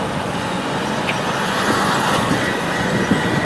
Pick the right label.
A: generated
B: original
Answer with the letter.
A